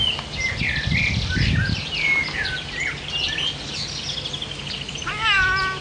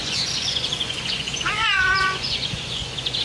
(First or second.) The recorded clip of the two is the first